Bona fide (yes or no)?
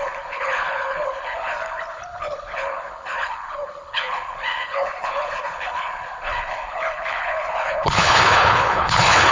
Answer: no